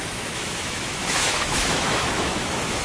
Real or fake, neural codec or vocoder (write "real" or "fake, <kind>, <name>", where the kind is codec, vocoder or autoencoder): fake, autoencoder, DAC-VAE